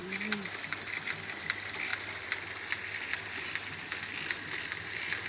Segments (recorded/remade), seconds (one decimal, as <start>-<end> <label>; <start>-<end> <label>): 0.0-5.3 recorded